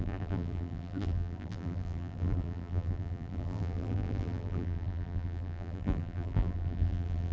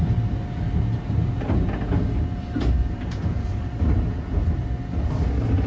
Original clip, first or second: second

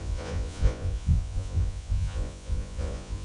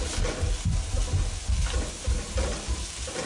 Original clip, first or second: second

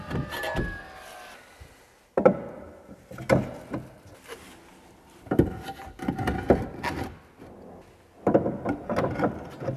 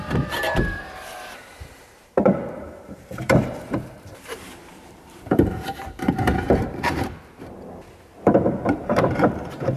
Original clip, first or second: first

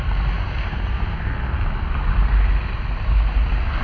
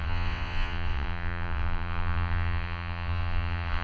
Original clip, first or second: first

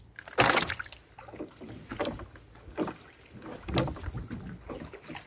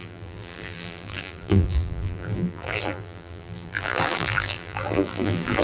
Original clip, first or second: first